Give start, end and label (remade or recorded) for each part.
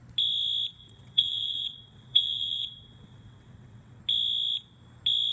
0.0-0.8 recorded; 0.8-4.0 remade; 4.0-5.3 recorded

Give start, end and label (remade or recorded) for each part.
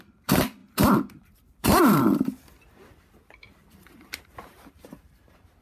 0.0-0.6 remade; 0.6-1.2 recorded; 1.2-2.0 remade; 2.0-4.2 recorded; 4.2-5.6 remade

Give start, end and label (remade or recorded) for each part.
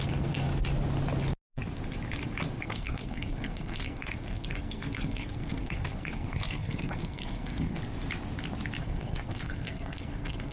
0.0-0.5 remade; 0.5-2.6 recorded; 2.6-7.8 remade; 7.8-8.8 recorded; 8.8-10.5 remade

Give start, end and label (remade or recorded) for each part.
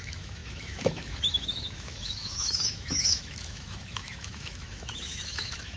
0.0-5.8 remade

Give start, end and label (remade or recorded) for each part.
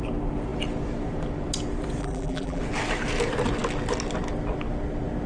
0.0-2.0 recorded; 2.0-2.6 remade; 2.6-5.3 recorded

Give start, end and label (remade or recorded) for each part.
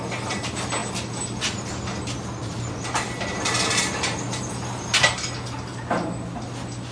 0.0-6.9 recorded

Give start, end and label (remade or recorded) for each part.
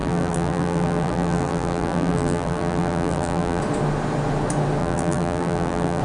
0.0-3.6 remade; 3.6-4.8 recorded; 4.8-6.0 remade